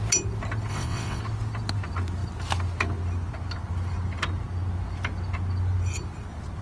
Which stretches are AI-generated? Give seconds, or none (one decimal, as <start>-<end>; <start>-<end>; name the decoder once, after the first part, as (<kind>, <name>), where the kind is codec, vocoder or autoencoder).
0.7-1.2 (vocoder, WaveNeXt)